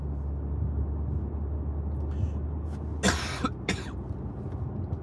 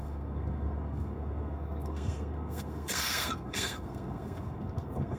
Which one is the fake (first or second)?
second